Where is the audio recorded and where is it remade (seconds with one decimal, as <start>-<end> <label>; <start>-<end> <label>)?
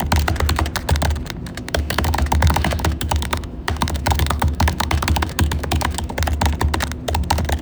0.0-1.5 recorded; 1.5-6.1 remade; 6.1-7.6 recorded